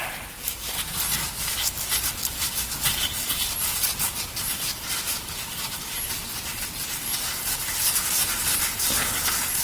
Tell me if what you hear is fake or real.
real